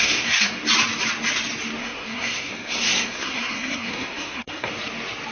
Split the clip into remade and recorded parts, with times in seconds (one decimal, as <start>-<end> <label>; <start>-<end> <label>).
0.0-0.6 remade; 0.6-1.8 recorded; 1.8-4.7 remade; 4.7-5.3 recorded